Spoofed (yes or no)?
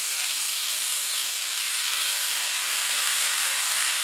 yes